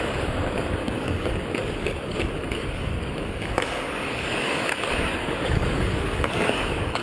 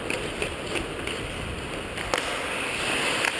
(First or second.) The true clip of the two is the second